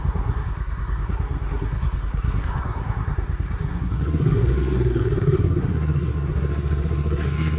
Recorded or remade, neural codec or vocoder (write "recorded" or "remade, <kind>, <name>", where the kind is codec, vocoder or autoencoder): remade, codec, SNAC